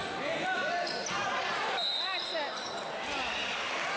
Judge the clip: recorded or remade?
recorded